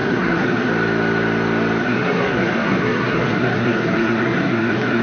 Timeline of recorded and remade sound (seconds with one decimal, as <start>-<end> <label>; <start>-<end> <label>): 0.0-0.7 remade; 0.7-1.8 recorded; 1.8-5.0 remade